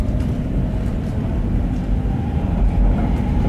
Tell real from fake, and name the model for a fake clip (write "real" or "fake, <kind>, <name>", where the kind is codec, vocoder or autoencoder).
fake, vocoder, BigVGAN v2